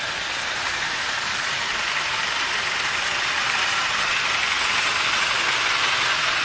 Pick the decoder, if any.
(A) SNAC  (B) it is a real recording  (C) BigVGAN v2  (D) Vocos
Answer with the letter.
B